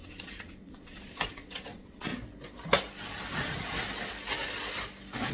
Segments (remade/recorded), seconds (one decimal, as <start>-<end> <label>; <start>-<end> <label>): 0.0-2.1 remade; 2.1-5.3 recorded